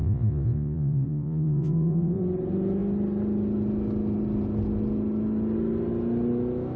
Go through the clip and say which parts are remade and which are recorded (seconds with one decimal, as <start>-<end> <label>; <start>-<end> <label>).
0.0-2.2 remade; 2.2-6.8 recorded